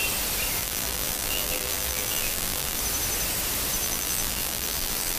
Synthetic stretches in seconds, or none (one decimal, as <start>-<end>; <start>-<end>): 0.6-2.8; 3.8-5.2